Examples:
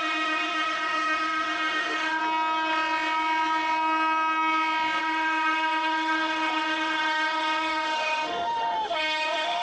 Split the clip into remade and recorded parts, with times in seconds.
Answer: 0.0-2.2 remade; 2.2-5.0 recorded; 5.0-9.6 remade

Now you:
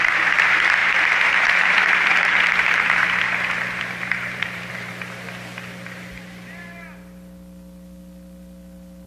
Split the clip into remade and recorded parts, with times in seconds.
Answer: 0.0-0.8 recorded; 0.8-2.9 remade; 2.9-4.0 recorded; 4.0-4.7 remade; 4.7-9.1 recorded

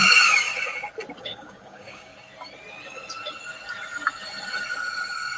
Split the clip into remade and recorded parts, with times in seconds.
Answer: 0.0-0.5 remade; 0.5-1.2 recorded; 1.2-2.1 remade; 2.1-5.4 recorded

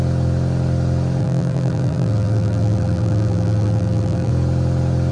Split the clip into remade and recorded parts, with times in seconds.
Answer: 0.0-1.2 recorded; 1.2-4.3 remade; 4.3-5.1 recorded